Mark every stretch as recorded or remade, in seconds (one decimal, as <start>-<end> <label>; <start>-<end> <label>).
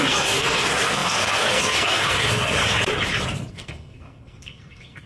0.0-2.6 remade; 2.6-3.5 recorded; 3.5-5.1 remade